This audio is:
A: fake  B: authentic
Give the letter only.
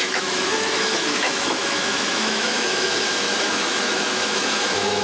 A